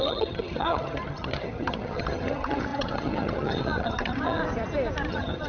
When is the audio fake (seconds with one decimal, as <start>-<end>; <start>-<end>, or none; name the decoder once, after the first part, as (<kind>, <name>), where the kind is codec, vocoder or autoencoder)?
0.0-4.4 (vocoder, HiFi-GAN); 5.1-5.5